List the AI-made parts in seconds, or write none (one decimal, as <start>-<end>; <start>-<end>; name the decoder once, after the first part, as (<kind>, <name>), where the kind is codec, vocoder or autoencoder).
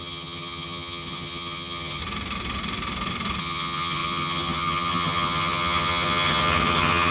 0.0-2.0 (vocoder, HiFi-GAN); 3.4-7.1